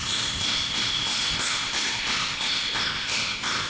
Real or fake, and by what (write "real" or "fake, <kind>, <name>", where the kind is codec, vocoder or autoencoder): fake, codec, ZipCodec